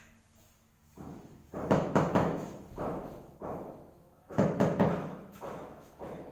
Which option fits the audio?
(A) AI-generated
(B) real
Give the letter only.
A